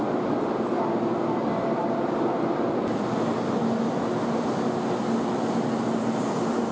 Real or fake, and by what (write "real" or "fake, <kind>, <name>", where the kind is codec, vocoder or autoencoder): real